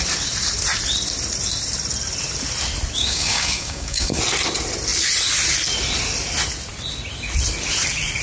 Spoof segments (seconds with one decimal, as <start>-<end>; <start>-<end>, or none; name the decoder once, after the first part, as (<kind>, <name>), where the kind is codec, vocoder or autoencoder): 3.0-4.2 (codec, DAC)